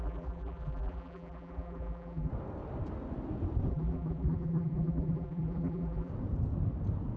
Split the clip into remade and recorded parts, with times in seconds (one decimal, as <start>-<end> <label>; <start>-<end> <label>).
0.0-2.3 remade; 2.3-3.7 recorded; 3.7-6.1 remade; 6.1-7.2 recorded